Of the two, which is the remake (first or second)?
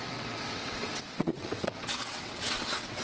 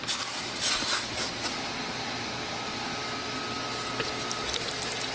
first